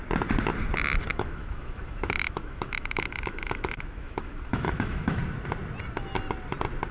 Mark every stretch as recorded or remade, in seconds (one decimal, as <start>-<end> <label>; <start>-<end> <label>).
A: 0.0-1.1 recorded; 1.1-5.2 remade; 5.2-6.9 recorded